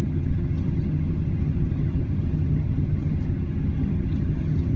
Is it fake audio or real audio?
fake